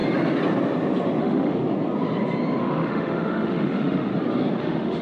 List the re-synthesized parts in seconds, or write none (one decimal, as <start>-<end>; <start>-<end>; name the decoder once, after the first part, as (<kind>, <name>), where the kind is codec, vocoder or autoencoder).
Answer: 1.2-1.6 (autoencoder, DAC-VAE); 2.6-4.1; 4.6-5.0